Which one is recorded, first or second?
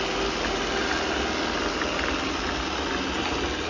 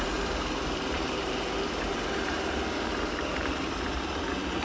first